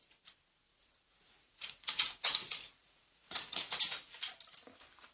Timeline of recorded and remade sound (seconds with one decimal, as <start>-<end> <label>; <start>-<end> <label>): 0.0-0.7 recorded; 0.7-3.8 remade; 3.8-5.1 recorded